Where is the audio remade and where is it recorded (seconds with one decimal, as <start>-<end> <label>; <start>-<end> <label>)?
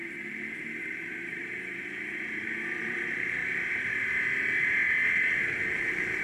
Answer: 0.0-0.8 recorded; 0.8-1.4 remade; 1.4-2.1 recorded; 2.1-3.4 remade; 3.4-6.2 recorded